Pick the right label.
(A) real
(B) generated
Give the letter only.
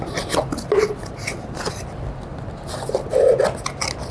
A